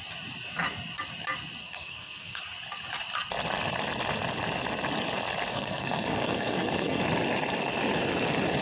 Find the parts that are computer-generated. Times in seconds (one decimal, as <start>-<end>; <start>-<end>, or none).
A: 1.6-2.4; 5.5-7.0